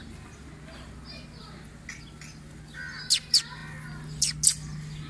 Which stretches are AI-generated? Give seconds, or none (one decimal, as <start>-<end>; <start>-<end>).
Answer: none